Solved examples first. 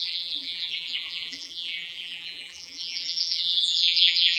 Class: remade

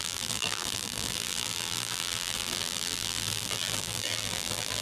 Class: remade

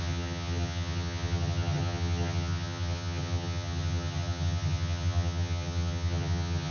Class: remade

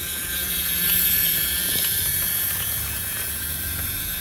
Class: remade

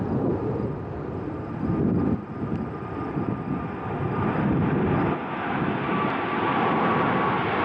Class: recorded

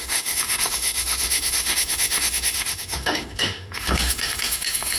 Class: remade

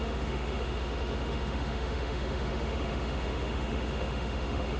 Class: remade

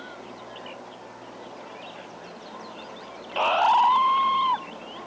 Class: recorded